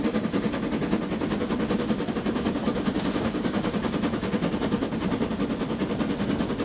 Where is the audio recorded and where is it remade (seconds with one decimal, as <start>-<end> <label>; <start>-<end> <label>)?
0.0-2.6 recorded; 2.6-5.3 remade; 5.3-6.6 recorded

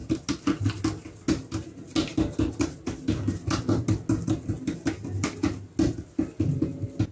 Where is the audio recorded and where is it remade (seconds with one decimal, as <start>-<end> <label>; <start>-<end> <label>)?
0.0-7.1 recorded

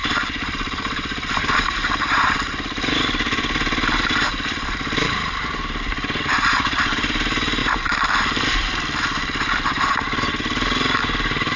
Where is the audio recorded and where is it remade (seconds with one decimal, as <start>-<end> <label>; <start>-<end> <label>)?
0.0-11.6 remade

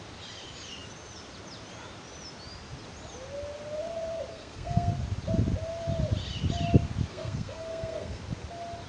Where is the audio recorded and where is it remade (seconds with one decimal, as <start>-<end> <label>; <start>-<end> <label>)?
0.0-4.3 recorded; 4.3-4.9 remade; 4.9-7.1 recorded; 7.1-8.2 remade; 8.2-8.9 recorded

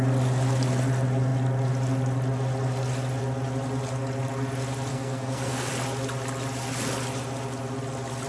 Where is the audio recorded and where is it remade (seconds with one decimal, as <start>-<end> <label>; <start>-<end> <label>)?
0.0-4.9 recorded; 4.9-5.7 remade; 5.7-8.3 recorded

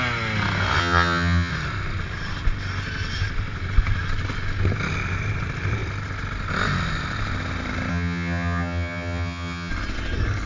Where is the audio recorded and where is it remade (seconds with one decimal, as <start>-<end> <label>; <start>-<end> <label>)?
0.0-0.8 recorded; 0.8-1.5 remade; 1.5-7.9 recorded; 7.9-9.7 remade; 9.7-10.5 recorded

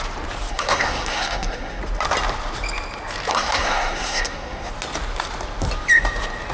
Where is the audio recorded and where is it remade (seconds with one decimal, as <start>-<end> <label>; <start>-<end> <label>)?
0.0-0.5 recorded; 0.5-1.8 remade; 1.8-3.3 recorded; 3.3-4.7 remade; 4.7-6.5 recorded